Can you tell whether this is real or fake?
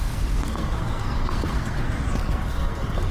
fake